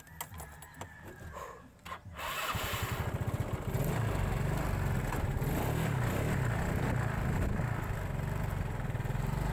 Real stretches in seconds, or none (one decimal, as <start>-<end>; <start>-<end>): 0.0-9.5